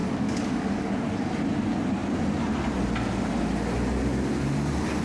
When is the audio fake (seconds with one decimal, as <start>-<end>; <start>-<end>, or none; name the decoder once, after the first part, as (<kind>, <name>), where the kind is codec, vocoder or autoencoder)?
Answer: 0.0-0.9 (codec, DAC)